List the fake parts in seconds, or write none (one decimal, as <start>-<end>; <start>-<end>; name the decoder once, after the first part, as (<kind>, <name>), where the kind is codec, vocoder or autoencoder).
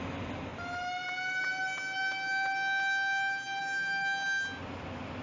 none